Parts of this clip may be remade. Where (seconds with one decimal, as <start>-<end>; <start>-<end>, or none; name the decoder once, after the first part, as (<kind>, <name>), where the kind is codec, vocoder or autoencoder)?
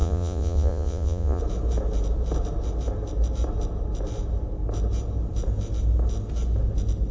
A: 0.0-1.4 (vocoder, Vocos)